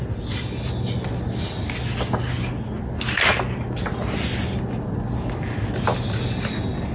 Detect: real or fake real